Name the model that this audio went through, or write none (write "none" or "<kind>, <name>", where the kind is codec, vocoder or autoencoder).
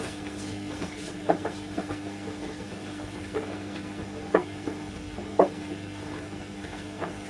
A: codec, SNAC